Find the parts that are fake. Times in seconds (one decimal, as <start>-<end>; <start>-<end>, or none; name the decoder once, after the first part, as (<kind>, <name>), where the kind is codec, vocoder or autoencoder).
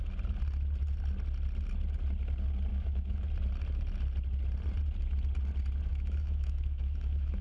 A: 2.7-3.3 (autoencoder, DAC-VAE); 5.9-7.4